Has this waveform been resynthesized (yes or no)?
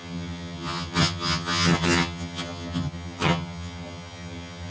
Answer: yes